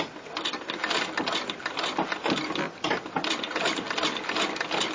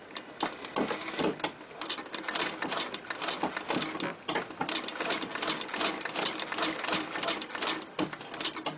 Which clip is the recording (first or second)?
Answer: second